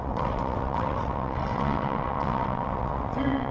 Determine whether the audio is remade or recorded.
remade